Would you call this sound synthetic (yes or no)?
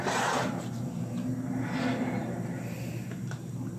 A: yes